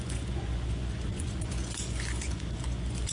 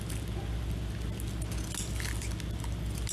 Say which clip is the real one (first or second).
second